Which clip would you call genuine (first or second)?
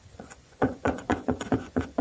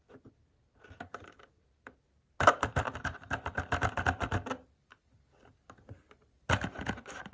second